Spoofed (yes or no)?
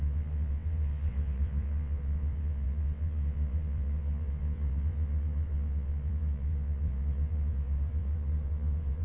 yes